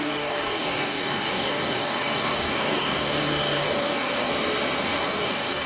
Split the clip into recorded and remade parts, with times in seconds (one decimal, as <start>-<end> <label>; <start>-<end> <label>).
0.0-4.3 remade; 4.3-4.8 recorded; 4.8-5.7 remade

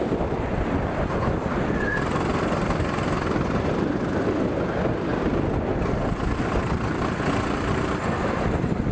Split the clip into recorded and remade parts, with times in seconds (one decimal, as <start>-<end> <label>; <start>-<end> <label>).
0.0-8.9 recorded

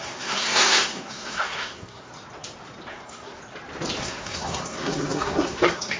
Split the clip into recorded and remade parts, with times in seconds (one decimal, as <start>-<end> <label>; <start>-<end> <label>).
0.0-2.1 remade; 2.1-2.9 recorded; 2.9-3.4 remade; 3.4-4.0 recorded; 4.0-6.0 remade

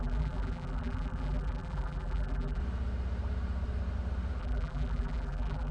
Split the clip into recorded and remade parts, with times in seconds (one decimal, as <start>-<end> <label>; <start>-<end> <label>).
0.0-2.6 remade; 2.6-4.4 recorded; 4.4-5.7 remade